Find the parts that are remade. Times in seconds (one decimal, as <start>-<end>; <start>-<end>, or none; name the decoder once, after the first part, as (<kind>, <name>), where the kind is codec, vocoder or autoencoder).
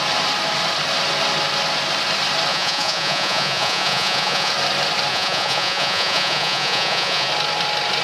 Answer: 2.5-4.5 (vocoder, Vocos); 5.1-7.3